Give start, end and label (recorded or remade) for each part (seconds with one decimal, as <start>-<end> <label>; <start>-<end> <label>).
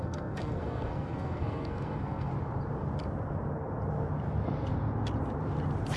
0.0-2.3 remade; 2.3-6.0 recorded